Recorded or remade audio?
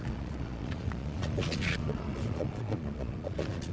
remade